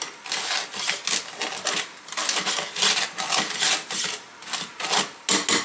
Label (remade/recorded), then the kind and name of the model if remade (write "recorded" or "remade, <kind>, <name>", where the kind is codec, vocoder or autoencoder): recorded